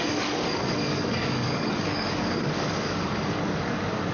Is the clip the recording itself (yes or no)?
no